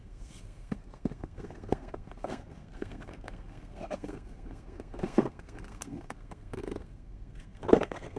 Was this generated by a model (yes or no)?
yes